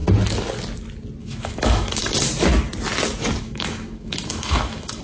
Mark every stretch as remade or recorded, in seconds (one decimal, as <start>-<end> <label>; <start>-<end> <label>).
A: 0.0-1.2 recorded; 1.2-2.3 remade; 2.3-3.4 recorded; 3.4-5.0 remade